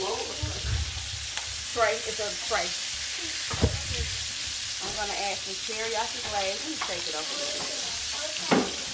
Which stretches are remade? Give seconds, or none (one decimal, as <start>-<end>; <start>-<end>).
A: 0.0-1.7; 2.5-8.9